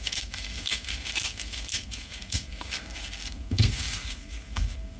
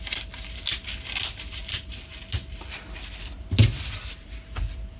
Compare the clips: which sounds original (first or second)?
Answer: second